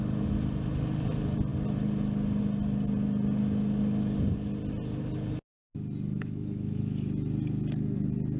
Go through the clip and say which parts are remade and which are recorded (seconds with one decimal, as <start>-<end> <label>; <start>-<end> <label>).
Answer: 0.0-6.1 recorded; 6.1-6.8 remade; 6.8-8.4 recorded